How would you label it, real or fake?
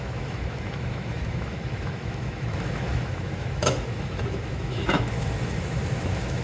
fake